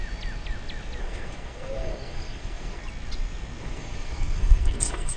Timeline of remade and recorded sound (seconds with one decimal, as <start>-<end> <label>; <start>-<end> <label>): 0.0-1.0 recorded; 1.0-2.8 remade; 2.8-3.6 recorded; 3.6-5.2 remade